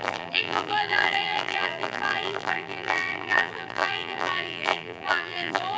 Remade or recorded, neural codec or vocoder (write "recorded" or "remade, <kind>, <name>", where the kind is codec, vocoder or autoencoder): remade, vocoder, BigVGAN v2